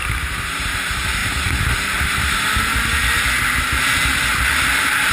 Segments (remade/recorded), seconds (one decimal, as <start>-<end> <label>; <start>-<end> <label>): 0.0-5.1 recorded